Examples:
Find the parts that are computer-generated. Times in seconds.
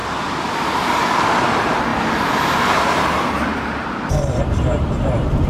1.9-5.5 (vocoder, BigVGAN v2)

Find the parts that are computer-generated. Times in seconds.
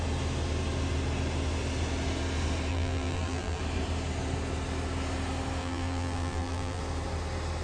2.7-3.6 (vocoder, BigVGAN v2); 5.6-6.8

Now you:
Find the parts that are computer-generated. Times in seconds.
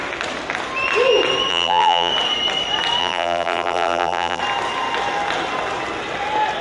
1.5-2.1 (vocoder, BigVGAN v2); 3.0-4.4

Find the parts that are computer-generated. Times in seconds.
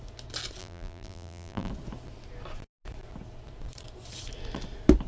0.6-1.7 (vocoder, BigVGAN v2)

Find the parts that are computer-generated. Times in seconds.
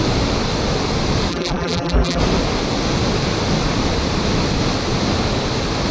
1.3-2.2 (vocoder, BigVGAN v2)